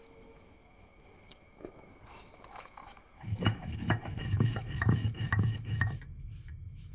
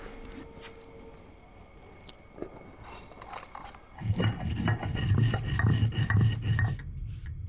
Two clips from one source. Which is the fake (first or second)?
first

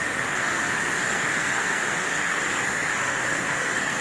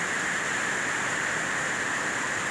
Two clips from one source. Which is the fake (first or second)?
first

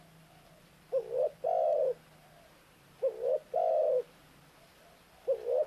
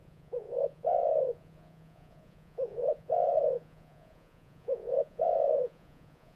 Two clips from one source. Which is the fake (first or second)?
second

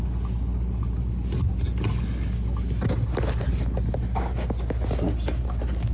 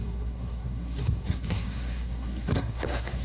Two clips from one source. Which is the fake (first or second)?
second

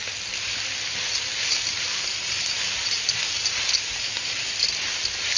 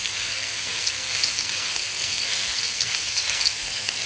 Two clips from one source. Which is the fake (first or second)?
second